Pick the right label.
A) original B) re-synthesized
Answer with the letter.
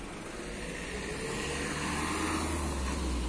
A